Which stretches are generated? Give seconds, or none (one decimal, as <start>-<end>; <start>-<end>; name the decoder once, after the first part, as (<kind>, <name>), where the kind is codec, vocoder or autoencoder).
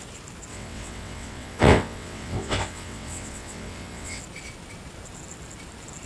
0.5-4.2 (vocoder, WaveNeXt)